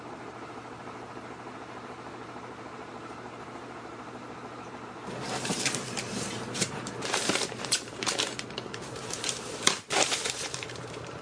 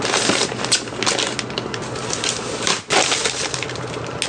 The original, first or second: second